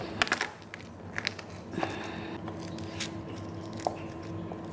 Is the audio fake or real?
real